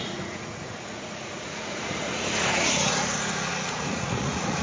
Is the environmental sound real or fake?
fake